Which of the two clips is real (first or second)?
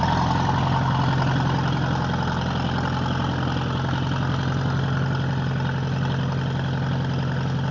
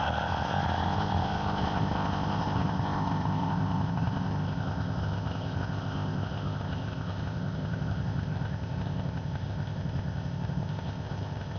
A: first